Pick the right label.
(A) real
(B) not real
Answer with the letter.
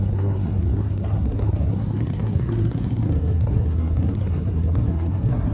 B